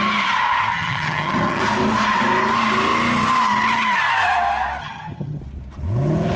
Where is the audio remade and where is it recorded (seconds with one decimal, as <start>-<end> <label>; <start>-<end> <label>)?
0.0-0.7 recorded; 0.7-1.6 remade; 1.6-4.8 recorded; 4.8-5.4 remade; 5.4-6.4 recorded